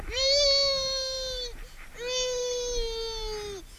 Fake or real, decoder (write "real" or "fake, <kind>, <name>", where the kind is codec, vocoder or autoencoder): real